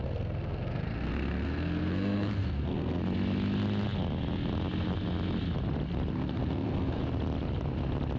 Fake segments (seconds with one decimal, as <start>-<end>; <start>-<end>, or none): 0.0-3.0; 6.1-7.0